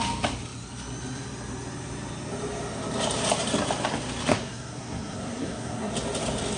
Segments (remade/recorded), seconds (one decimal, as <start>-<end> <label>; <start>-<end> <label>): 0.0-4.3 recorded; 4.3-5.9 remade; 5.9-6.6 recorded